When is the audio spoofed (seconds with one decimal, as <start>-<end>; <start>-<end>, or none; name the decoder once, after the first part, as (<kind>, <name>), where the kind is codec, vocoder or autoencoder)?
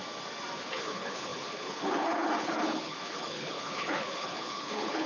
0.6-5.1 (codec, HILCodec)